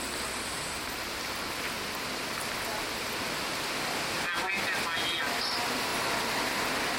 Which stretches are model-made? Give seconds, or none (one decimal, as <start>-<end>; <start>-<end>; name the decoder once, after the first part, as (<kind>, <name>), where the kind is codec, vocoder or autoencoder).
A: none